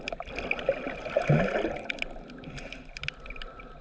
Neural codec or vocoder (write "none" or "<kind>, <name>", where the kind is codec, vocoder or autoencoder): none